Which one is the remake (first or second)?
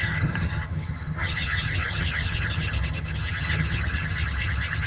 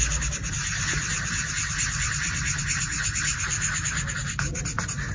first